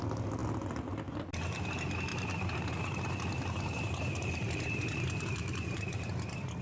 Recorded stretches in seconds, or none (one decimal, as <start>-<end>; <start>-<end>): 0.0-2.1; 5.8-6.6

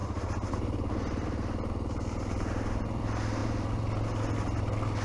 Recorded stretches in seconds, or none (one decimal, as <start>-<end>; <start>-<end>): 0.0-5.0

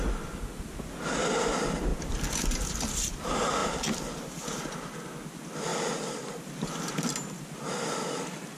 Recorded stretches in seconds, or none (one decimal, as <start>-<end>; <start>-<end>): 0.0-1.9; 3.1-3.6; 4.6-5.7; 6.4-8.6

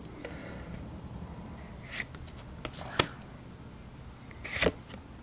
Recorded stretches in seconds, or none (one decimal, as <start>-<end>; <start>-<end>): 0.0-0.4; 1.6-5.2